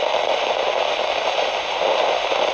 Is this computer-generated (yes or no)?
no